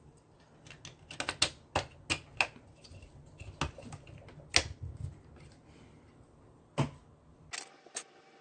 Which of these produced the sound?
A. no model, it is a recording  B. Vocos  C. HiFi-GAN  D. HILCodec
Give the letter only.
A